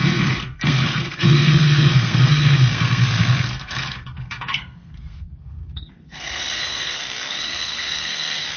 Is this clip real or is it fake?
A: fake